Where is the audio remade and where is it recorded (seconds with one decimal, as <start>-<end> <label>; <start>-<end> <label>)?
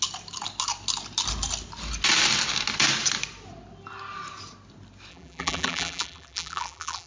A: 0.0-5.1 recorded; 5.1-7.1 remade